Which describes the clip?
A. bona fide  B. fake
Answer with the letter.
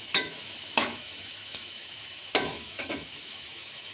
B